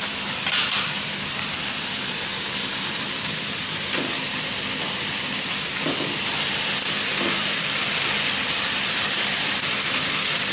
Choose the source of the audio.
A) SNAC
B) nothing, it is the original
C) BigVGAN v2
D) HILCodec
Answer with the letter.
C